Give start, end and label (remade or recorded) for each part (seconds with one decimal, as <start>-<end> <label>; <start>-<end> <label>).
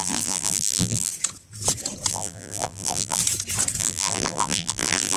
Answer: 0.0-1.1 remade; 1.1-2.1 recorded; 2.1-3.2 remade; 3.2-3.8 recorded; 3.8-5.2 remade